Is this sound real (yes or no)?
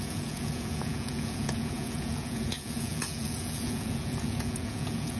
no